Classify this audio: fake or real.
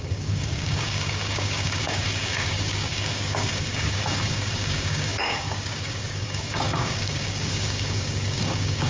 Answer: fake